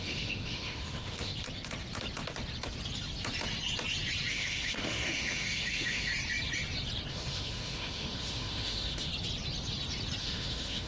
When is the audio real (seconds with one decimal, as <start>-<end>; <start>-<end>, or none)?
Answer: 1.3-4.3; 6.1-7.1; 9.1-10.2